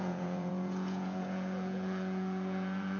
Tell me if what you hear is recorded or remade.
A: remade